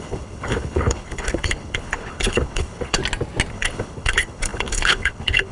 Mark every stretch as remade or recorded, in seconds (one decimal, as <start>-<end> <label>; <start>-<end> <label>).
0.0-3.0 remade; 3.0-3.5 recorded; 3.5-5.5 remade